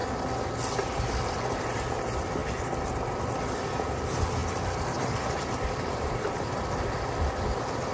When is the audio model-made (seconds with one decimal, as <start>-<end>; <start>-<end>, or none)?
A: 1.0-2.4; 3.2-7.9